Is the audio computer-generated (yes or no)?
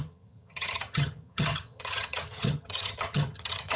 yes